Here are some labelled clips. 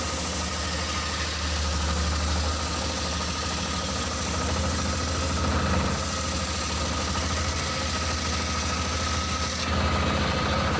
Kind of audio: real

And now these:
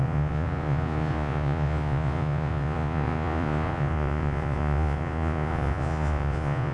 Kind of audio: fake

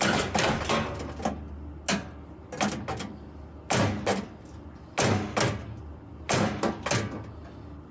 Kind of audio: real